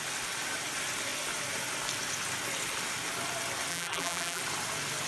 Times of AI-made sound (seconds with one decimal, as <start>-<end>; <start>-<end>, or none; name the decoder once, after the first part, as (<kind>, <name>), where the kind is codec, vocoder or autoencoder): 3.7-4.4 (vocoder, BigVGAN v2)